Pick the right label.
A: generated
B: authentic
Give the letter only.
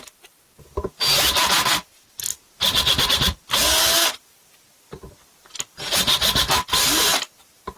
B